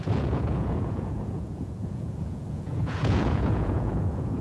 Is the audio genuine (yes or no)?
no